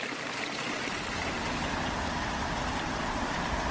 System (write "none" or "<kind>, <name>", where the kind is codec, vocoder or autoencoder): none